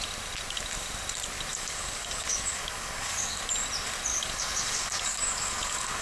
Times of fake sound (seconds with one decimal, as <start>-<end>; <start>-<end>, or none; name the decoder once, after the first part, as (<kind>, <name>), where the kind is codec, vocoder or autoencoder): 1.5-3.4 (codec, DAC); 4.1-6.0